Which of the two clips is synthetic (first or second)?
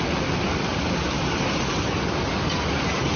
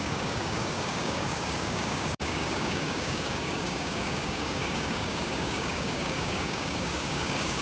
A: second